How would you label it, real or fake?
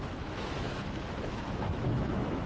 fake